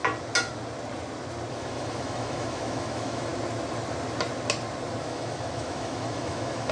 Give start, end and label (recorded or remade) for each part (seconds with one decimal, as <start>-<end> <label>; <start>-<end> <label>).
0.0-1.5 recorded; 1.5-3.3 remade; 3.3-5.0 recorded; 5.0-6.7 remade